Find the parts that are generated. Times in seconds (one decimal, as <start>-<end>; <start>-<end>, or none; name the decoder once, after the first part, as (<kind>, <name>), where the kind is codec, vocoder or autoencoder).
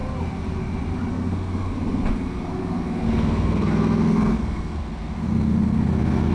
1.1-6.3 (codec, SNAC)